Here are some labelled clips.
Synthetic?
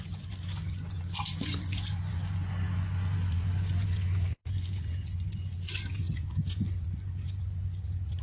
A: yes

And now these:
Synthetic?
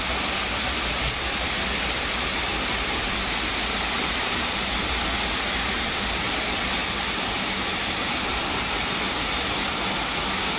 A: no